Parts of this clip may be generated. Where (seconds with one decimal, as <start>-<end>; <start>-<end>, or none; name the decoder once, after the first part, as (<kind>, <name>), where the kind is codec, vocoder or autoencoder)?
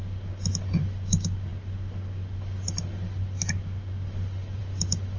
none